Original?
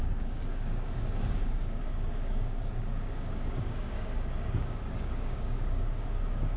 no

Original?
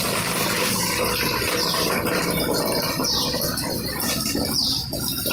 no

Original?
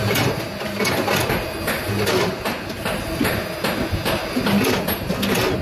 yes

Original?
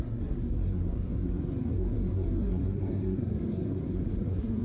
no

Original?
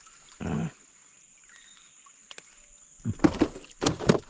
yes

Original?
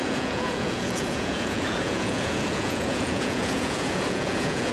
no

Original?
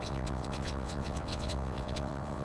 no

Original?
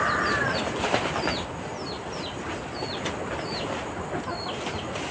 yes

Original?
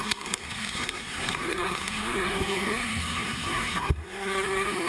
no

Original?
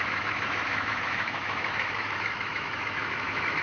no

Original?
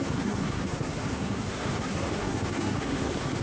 no